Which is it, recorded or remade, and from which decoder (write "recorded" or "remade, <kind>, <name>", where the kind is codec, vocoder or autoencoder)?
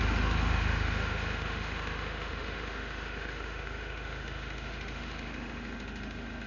remade, autoencoder, DAC-VAE